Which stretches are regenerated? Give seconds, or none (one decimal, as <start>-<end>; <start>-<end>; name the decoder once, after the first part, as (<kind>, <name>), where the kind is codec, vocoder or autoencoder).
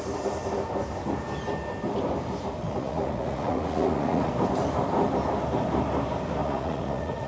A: 2.6-4.3 (vocoder, Vocos); 6.4-7.3